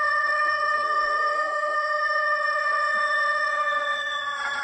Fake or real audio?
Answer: fake